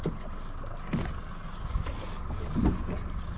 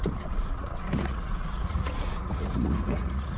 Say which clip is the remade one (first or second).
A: second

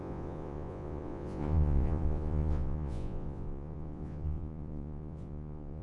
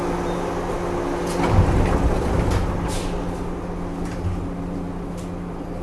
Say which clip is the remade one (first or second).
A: first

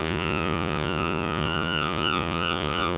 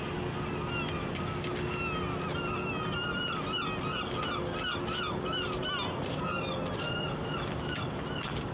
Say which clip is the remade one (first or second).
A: first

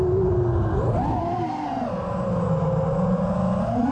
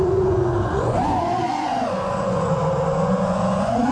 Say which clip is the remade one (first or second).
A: second